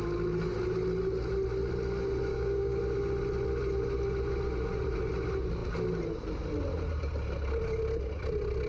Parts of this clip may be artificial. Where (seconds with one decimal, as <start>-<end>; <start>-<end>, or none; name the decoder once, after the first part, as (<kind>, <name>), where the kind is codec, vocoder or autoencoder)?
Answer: 2.3-2.8 (codec, DAC)

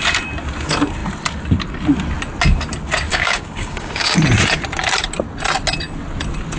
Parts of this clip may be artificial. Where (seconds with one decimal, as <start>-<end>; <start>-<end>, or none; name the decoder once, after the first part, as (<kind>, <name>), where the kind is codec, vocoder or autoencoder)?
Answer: 3.1-4.2 (codec, DAC)

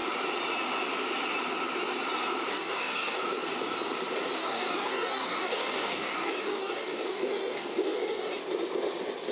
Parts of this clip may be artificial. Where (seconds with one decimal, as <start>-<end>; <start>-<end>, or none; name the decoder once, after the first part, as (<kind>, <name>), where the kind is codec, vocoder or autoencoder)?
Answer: 2.5-3.2 (codec, DAC); 4.4-8.4

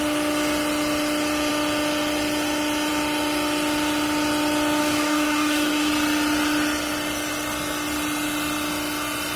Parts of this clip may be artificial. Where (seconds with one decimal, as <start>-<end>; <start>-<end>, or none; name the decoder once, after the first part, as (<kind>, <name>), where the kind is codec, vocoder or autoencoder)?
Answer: 4.8-5.9 (codec, DAC)

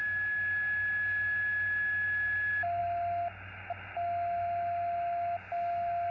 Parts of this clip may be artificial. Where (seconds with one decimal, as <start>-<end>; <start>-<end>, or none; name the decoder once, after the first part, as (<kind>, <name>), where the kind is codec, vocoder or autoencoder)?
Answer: none

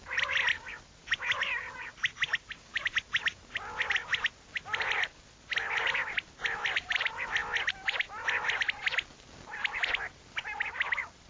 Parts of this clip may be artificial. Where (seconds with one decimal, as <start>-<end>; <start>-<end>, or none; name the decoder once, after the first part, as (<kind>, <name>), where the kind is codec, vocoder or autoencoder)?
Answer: none